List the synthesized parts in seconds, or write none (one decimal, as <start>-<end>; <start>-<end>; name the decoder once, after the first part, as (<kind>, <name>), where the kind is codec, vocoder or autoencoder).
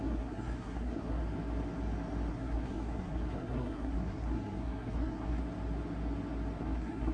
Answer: 0.0-1.2 (codec, SNAC); 2.3-5.4; 6.6-7.1